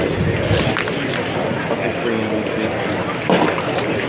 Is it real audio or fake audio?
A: real